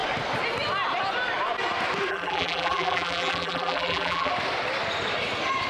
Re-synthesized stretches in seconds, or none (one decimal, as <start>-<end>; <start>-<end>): 2.1-4.3